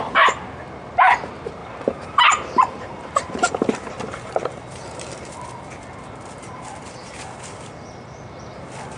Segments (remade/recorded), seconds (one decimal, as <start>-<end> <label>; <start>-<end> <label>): 0.0-1.6 recorded; 1.6-5.3 remade; 5.3-9.0 recorded